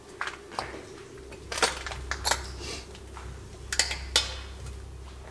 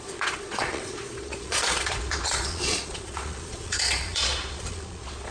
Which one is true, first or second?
first